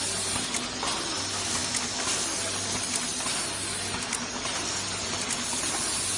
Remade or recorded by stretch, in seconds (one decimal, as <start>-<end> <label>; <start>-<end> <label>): 0.0-6.2 recorded